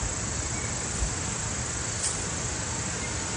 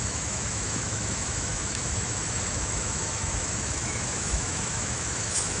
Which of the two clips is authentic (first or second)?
first